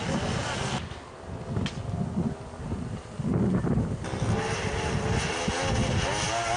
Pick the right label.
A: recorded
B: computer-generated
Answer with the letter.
A